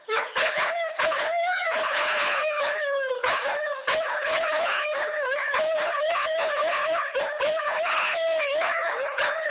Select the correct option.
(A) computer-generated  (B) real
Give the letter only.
A